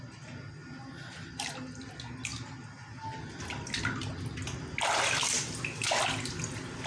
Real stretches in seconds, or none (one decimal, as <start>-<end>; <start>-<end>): 0.0-6.9